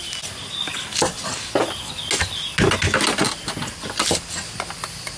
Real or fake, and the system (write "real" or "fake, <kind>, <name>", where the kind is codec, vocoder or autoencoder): real